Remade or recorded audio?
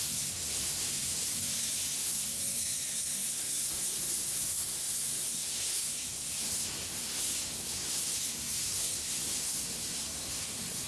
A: remade